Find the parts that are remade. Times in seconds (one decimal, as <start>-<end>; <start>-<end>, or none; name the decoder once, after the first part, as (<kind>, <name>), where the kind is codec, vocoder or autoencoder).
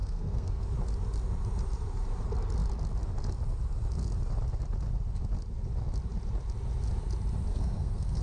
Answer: 0.0-0.6 (codec, SNAC); 7.5-8.2